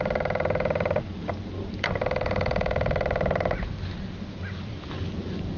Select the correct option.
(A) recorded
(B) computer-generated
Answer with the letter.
A